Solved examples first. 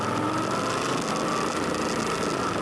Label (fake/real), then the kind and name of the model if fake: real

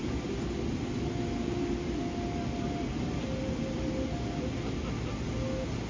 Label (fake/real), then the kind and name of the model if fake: real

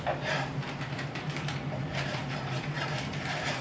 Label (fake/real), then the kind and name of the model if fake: fake, vocoder, BigVGAN v2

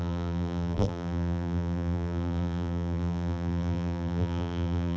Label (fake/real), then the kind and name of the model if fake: fake, vocoder, BigVGAN v2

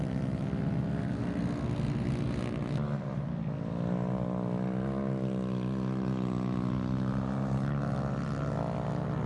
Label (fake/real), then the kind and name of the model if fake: real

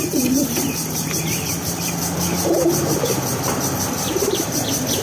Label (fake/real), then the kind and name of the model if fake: fake, vocoder, BigVGAN v2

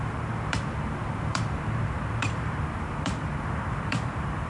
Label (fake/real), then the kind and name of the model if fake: fake, vocoder, BigVGAN v2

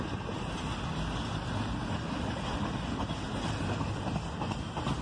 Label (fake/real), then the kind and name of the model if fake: real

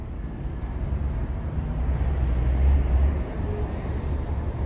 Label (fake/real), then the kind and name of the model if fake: real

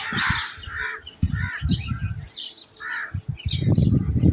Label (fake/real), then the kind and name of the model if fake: fake, vocoder, BigVGAN v2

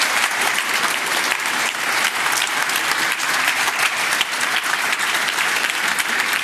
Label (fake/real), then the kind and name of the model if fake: fake, vocoder, BigVGAN v2